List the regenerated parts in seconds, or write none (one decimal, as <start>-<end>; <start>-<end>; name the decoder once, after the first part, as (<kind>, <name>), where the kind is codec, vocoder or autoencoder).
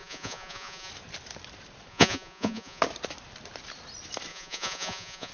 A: 0.0-0.9 (vocoder, Vocos); 1.9-2.8; 4.3-5.3